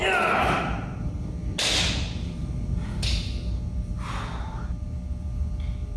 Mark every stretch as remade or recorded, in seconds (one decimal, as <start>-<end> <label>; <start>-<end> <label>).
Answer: 0.0-6.0 recorded